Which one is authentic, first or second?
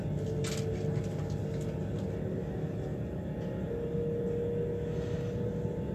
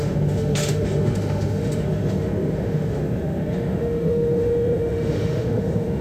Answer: first